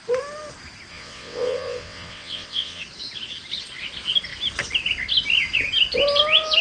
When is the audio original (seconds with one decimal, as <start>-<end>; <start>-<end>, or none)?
0.0-0.9; 2.8-6.6